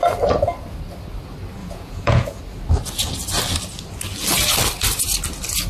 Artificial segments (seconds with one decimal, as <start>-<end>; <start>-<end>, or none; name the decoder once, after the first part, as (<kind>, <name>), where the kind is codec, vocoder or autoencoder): 1.6-2.4 (vocoder, Vocos)